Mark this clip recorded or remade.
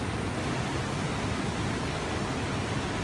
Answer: recorded